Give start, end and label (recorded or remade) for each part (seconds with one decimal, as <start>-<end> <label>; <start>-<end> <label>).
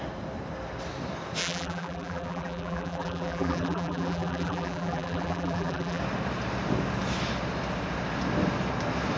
0.0-1.4 recorded; 1.4-6.0 remade; 6.0-9.2 recorded